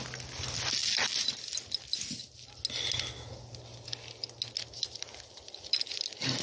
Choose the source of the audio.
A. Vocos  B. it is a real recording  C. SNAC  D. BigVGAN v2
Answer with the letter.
B